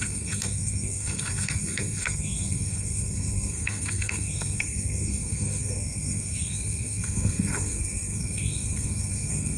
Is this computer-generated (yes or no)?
yes